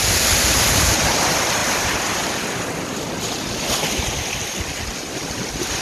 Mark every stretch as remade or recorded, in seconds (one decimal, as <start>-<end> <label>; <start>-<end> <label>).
0.0-5.8 recorded